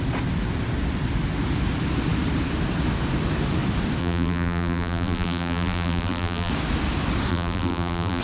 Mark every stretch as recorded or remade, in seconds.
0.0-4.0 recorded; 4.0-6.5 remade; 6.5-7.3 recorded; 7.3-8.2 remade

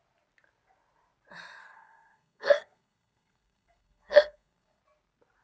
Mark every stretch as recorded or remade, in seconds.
0.0-1.6 recorded; 1.6-4.8 remade; 4.8-5.4 recorded

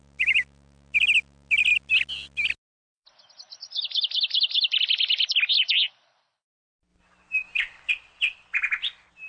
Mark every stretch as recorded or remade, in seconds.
0.0-9.3 recorded

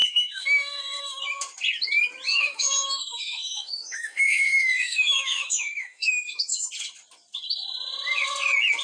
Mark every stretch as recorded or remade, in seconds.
0.0-1.2 remade; 1.2-2.3 recorded; 2.3-6.7 remade; 6.7-8.8 recorded

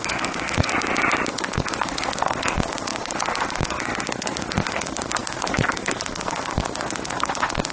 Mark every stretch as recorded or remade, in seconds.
0.0-0.7 remade; 0.7-1.3 recorded; 1.3-7.7 remade